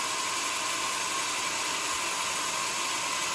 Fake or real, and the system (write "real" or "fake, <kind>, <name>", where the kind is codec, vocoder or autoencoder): real